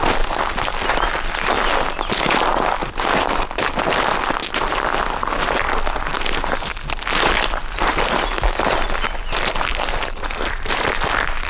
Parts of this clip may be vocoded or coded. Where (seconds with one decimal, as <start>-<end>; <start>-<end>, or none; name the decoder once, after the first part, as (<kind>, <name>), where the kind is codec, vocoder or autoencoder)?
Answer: 9.7-11.5 (vocoder, BigVGAN v2)